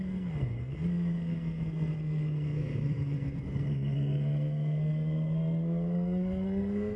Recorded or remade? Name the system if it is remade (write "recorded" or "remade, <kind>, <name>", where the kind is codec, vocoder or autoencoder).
remade, codec, SNAC